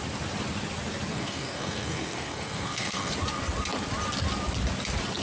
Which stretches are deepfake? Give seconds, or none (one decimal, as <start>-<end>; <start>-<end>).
1.1-3.1

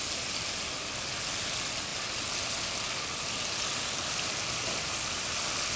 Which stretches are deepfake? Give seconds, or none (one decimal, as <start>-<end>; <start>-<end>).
none

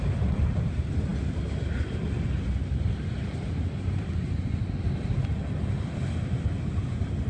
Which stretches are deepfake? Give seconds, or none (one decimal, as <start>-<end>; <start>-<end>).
none

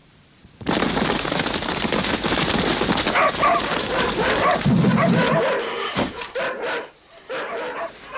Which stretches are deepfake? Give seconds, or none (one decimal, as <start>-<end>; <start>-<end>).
none

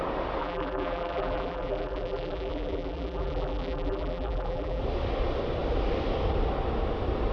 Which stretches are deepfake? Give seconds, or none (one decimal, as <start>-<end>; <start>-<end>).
0.4-4.8

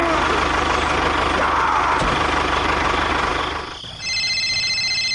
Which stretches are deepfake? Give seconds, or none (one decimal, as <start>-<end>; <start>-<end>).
none

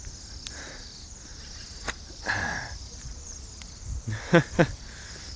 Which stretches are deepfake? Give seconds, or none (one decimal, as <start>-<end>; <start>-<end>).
3.1-4.8